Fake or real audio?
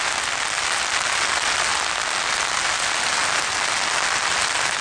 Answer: real